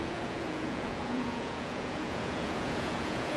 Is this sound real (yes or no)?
no